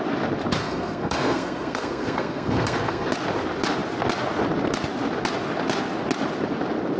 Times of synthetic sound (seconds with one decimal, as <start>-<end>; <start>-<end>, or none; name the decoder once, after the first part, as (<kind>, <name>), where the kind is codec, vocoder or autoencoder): 0.6-3.1 (codec, SNAC)